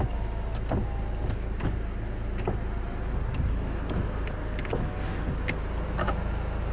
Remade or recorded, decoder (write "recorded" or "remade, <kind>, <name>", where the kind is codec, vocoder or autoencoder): recorded